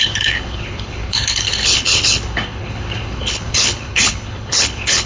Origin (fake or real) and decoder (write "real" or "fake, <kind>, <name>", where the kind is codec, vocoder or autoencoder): fake, codec, HILCodec